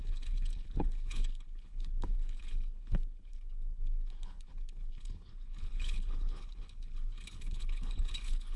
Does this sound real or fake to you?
fake